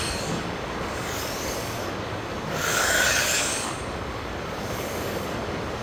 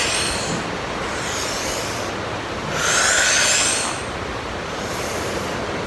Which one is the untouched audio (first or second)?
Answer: second